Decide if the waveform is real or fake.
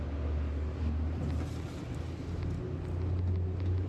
real